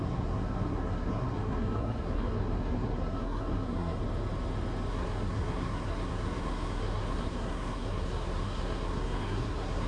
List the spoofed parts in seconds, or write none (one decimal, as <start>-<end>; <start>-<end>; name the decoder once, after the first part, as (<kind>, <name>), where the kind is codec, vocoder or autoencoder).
0.0-4.0 (codec, SNAC); 4.9-9.9